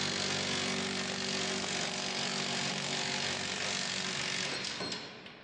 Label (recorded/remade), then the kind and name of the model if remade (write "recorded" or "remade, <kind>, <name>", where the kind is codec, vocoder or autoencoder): recorded